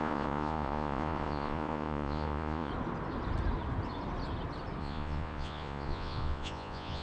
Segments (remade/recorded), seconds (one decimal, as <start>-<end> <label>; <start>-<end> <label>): 0.0-2.7 remade; 2.7-4.8 recorded; 4.8-7.0 remade